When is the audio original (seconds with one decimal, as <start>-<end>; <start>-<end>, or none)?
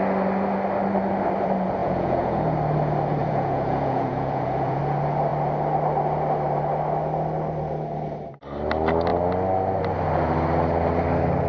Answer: 0.0-1.8; 2.4-3.2; 4.8-11.5